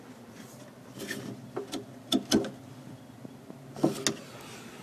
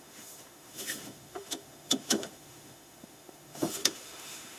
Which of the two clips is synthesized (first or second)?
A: second